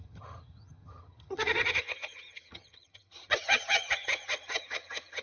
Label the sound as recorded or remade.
remade